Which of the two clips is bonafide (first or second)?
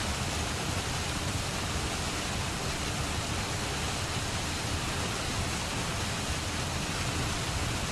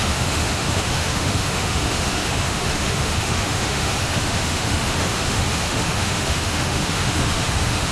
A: first